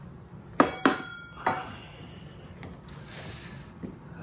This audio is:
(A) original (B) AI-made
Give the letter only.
A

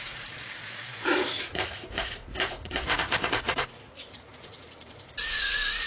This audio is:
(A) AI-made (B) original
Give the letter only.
A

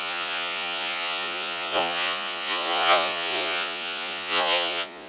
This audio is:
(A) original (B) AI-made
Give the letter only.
B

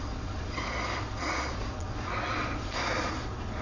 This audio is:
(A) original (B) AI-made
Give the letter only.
B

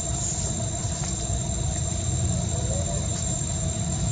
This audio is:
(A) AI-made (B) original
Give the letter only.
B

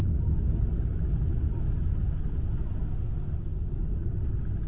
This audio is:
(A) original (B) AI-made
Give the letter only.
A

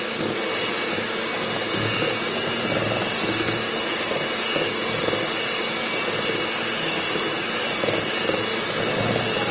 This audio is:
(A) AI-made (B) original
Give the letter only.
B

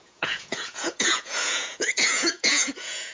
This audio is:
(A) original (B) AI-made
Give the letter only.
B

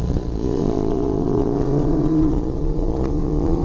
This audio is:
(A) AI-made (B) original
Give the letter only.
A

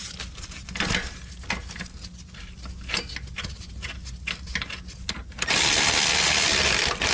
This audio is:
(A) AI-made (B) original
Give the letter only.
B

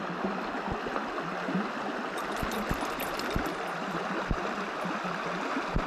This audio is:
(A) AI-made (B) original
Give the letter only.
B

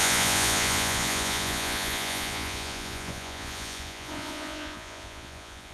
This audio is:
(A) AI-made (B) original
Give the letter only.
A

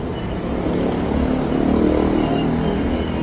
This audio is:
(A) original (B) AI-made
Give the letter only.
A